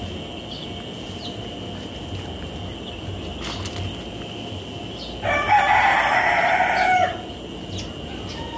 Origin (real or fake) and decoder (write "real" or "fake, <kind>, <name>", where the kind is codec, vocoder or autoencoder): real